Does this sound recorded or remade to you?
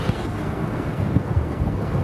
remade